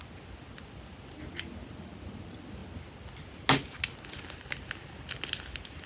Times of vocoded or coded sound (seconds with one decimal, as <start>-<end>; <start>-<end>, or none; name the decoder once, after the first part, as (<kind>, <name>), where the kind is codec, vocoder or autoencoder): none